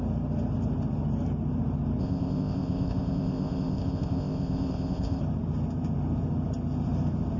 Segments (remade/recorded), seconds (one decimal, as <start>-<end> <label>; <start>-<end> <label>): 0.0-2.0 recorded; 2.0-5.2 remade; 5.2-7.4 recorded